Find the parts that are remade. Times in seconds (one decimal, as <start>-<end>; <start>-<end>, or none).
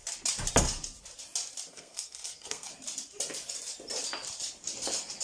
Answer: 1.7-2.7